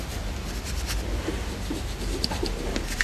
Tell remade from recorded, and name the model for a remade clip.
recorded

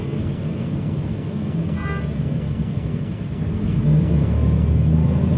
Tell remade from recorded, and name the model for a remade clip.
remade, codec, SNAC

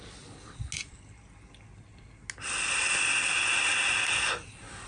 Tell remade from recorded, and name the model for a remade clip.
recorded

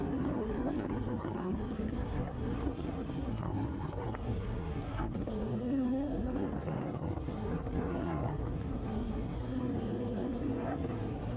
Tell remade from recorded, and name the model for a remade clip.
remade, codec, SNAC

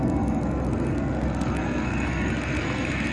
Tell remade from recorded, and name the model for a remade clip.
remade, codec, SNAC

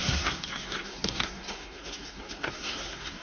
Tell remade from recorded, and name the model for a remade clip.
remade, codec, SNAC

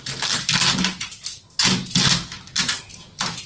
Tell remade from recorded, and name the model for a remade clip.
recorded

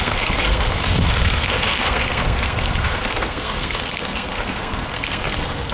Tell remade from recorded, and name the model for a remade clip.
remade, codec, SNAC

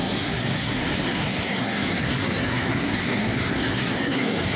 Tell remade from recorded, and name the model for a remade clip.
remade, codec, SNAC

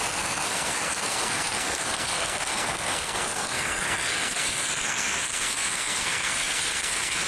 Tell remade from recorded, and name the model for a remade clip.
remade, codec, SNAC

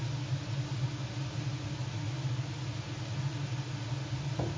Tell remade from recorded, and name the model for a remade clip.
recorded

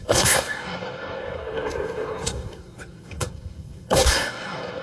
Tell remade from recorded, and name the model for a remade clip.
remade, codec, SNAC